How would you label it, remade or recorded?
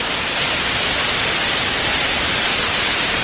remade